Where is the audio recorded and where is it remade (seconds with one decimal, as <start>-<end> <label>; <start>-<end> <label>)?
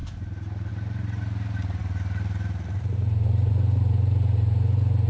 0.0-5.1 recorded